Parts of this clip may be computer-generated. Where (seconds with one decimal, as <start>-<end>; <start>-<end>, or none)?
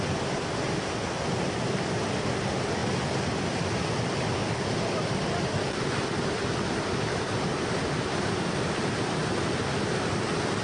none